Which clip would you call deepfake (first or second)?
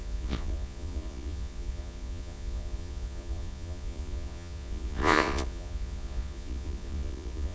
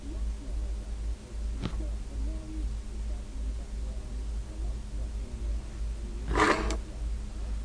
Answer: first